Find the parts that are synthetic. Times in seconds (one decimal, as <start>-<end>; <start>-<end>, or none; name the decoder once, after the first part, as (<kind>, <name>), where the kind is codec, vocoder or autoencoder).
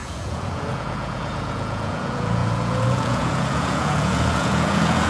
0.0-5.1 (vocoder, Vocos)